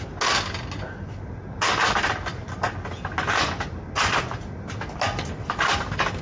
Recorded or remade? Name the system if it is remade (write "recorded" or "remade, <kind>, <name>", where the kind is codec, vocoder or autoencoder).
recorded